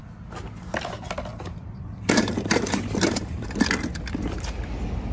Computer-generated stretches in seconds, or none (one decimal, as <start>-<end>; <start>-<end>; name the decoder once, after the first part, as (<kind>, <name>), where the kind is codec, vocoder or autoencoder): 1.3-3.6 (vocoder, BigVGAN v2)